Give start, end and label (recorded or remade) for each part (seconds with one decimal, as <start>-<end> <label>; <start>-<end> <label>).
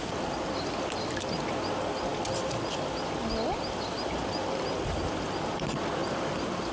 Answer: 0.0-6.7 recorded